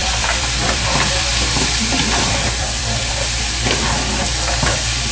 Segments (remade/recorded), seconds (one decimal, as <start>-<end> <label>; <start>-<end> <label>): 0.0-3.1 remade; 3.1-5.1 recorded